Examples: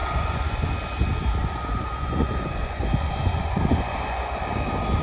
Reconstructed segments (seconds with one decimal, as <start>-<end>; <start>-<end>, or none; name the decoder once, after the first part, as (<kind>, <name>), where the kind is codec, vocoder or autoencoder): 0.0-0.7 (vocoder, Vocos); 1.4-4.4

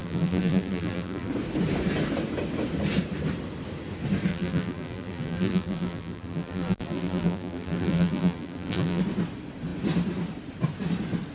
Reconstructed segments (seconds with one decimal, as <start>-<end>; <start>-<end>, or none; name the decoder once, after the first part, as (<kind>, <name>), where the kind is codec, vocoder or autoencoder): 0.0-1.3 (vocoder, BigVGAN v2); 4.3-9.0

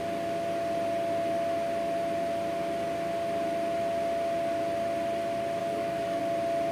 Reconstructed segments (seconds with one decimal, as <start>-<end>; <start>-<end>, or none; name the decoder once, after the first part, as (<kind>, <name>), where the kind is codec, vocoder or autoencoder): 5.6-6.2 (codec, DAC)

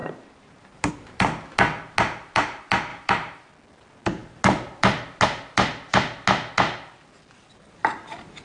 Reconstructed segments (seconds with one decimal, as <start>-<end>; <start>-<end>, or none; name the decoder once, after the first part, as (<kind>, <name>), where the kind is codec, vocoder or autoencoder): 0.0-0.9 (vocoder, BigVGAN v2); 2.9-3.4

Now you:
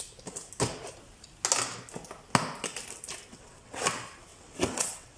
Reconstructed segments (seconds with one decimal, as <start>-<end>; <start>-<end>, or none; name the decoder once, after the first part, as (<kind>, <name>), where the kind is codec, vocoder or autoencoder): 3.3-3.8 (vocoder, WaveNeXt); 4.3-5.2